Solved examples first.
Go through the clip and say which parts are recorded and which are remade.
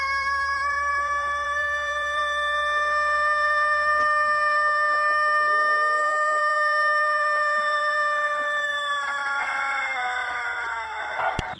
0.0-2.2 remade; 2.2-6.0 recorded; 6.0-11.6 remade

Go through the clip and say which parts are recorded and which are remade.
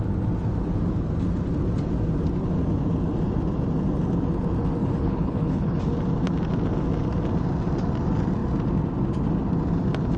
0.0-4.8 recorded; 4.8-5.8 remade; 5.8-10.2 recorded